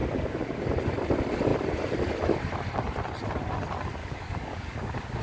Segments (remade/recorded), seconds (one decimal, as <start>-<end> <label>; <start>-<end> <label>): 0.0-0.6 remade; 0.6-4.0 recorded; 4.0-5.2 remade

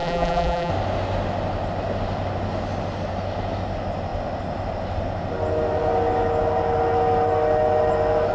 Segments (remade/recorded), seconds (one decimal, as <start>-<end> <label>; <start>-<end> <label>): 0.0-0.7 remade; 0.7-8.3 recorded

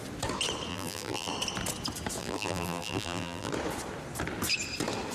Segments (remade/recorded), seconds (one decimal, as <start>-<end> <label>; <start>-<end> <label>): 0.0-0.7 recorded; 0.7-1.3 remade; 1.3-2.2 recorded; 2.2-3.5 remade; 3.5-5.1 recorded